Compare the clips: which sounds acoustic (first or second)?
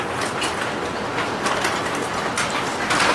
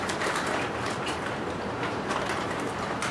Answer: first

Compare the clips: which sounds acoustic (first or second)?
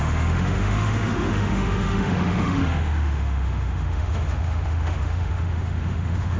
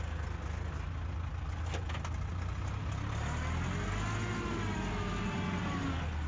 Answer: second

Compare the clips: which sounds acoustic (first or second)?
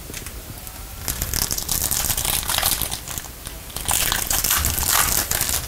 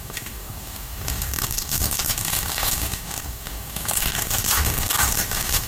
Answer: first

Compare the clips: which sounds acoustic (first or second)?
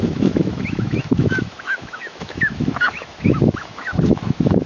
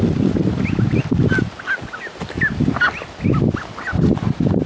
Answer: second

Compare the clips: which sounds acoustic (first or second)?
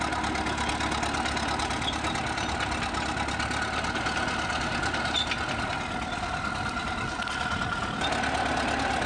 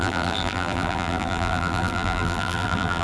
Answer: first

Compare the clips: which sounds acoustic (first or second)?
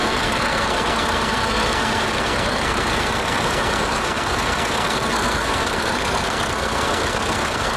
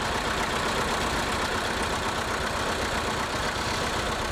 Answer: second